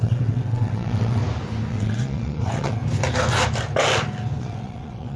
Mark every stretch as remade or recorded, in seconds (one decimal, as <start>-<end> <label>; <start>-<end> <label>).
0.0-1.2 remade; 1.2-1.7 recorded; 1.7-2.8 remade; 2.8-4.4 recorded; 4.4-5.2 remade